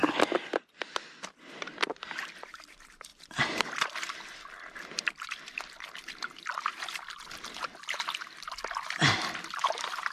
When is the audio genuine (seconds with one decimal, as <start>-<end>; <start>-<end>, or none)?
0.0-3.1; 3.8-10.1